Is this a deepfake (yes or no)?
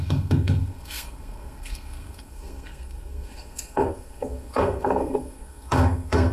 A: yes